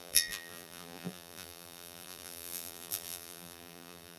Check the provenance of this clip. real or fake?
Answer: fake